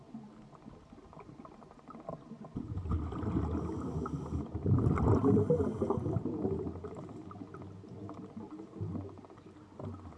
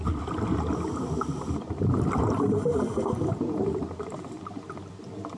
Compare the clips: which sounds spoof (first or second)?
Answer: second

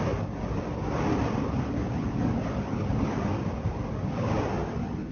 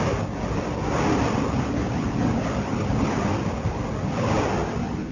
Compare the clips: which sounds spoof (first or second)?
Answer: first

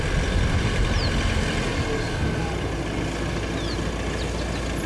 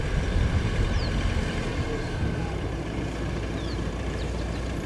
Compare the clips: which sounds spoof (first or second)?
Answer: second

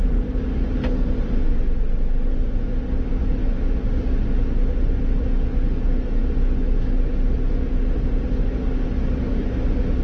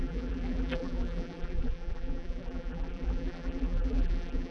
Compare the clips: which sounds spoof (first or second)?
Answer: second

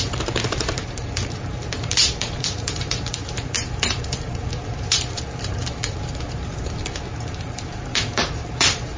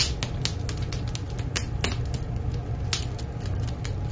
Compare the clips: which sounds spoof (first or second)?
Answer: first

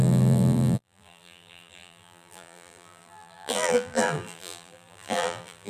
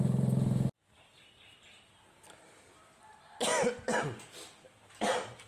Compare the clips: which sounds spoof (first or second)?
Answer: first